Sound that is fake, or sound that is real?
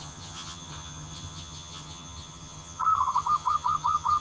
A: fake